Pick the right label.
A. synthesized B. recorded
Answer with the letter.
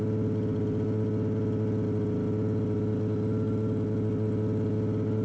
B